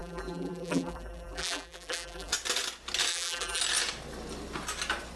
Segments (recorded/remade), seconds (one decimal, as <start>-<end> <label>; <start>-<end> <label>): 0.0-2.3 remade; 2.3-3.1 recorded; 3.1-3.6 remade; 3.6-5.2 recorded